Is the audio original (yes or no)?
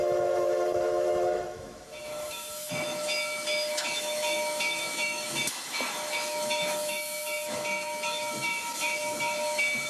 no